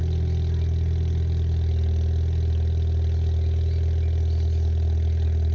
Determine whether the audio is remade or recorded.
recorded